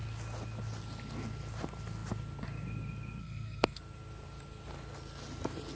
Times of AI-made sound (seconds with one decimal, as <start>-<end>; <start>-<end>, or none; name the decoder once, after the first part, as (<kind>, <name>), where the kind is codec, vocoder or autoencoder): 3.2-3.8 (codec, SNAC)